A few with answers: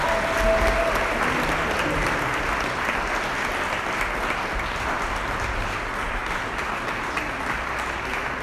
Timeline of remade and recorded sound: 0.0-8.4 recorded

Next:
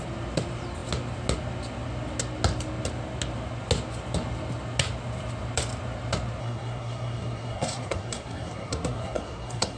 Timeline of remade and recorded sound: 0.0-6.4 recorded; 6.4-9.8 remade

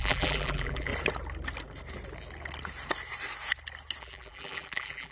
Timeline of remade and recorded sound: 0.0-0.9 remade; 0.9-4.0 recorded; 4.0-5.1 remade

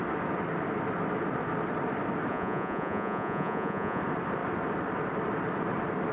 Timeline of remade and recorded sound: 0.0-2.3 recorded; 2.3-4.0 remade; 4.0-6.1 recorded

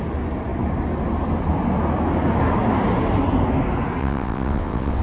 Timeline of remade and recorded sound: 0.0-4.0 recorded; 4.0-5.0 remade

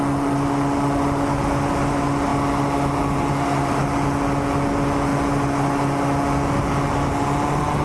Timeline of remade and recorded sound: 0.0-7.8 recorded

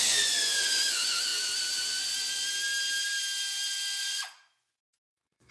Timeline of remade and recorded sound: 0.0-1.3 remade; 1.3-4.0 recorded; 4.0-5.5 remade

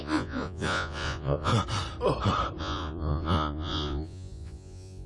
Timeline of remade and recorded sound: 0.0-1.5 remade; 1.5-2.6 recorded; 2.6-5.1 remade